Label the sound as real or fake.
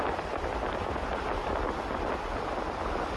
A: real